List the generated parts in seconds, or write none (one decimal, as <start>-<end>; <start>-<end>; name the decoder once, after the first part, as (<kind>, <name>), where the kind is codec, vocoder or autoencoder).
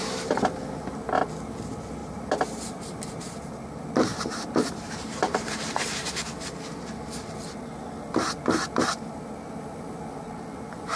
2.0-3.5 (vocoder, BigVGAN v2); 4.1-6.4